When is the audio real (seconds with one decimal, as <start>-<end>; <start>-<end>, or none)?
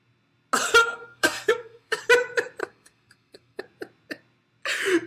0.0-0.8; 2.0-2.6; 3.6-5.1